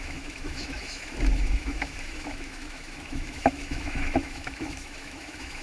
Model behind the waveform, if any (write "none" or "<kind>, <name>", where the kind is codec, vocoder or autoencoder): autoencoder, DAC-VAE